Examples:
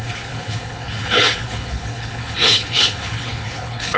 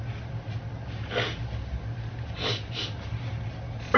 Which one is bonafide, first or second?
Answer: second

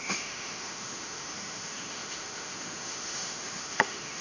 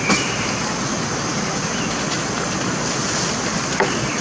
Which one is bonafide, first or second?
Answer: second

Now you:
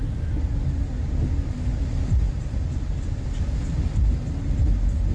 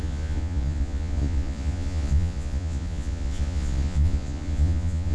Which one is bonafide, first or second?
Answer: first